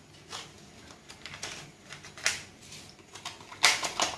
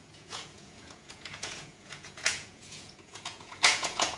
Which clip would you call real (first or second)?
first